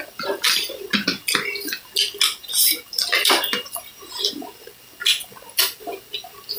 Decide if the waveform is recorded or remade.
recorded